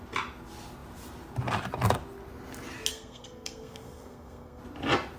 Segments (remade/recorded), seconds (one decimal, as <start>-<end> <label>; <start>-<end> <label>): 0.0-2.9 recorded; 2.9-4.6 remade; 4.6-5.2 recorded